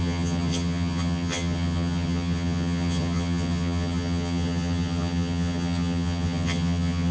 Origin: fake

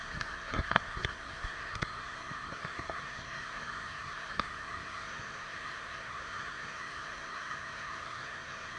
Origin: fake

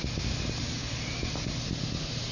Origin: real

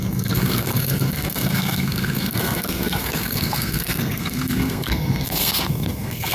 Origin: fake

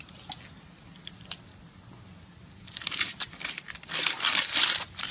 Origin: real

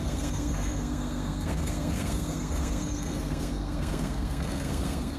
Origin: fake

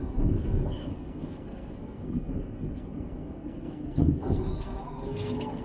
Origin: fake